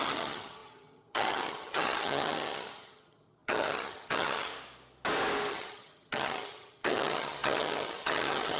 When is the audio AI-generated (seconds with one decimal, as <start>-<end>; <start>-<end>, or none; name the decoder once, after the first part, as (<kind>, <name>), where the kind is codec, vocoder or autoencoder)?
0.0-4.5 (vocoder, HiFi-GAN); 5.5-8.6